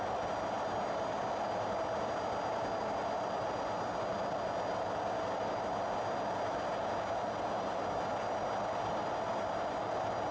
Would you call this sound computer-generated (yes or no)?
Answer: no